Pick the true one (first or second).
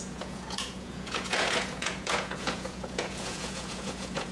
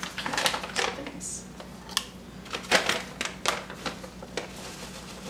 second